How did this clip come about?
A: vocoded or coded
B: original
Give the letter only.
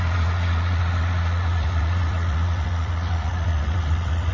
A